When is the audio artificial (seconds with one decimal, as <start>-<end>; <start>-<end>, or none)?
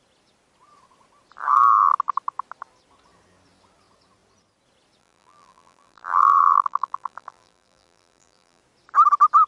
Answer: 5.0-8.6